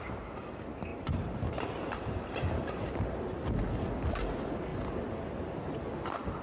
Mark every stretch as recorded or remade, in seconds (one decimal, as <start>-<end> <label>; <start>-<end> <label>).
0.0-0.9 recorded; 0.9-2.9 remade; 2.9-6.4 recorded